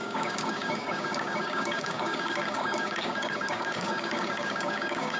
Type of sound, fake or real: fake